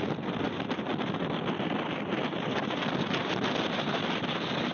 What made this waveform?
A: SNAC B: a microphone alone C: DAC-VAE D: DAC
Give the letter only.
B